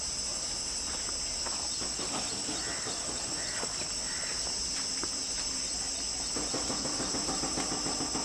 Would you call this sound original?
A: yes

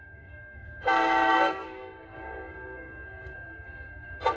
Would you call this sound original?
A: no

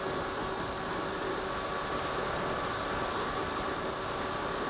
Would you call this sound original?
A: yes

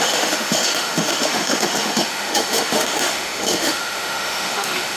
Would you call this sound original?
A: no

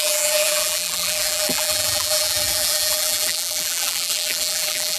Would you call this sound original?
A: no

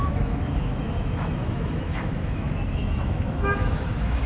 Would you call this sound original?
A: no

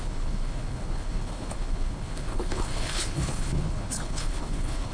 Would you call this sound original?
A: no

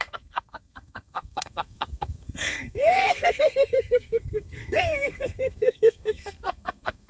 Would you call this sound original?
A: no